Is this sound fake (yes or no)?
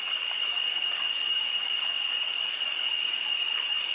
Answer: yes